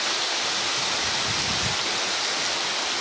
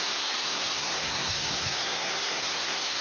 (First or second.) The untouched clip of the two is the first